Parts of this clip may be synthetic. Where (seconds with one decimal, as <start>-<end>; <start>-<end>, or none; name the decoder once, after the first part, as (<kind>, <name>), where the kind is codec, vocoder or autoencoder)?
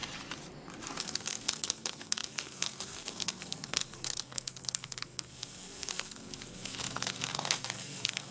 1.0-8.3 (codec, SNAC)